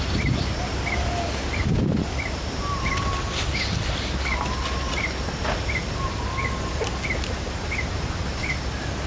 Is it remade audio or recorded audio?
recorded